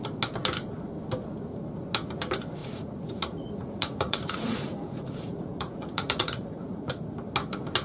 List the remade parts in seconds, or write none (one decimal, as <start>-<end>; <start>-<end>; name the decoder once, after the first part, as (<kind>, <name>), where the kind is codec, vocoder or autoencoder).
2.6-7.0 (vocoder, Vocos)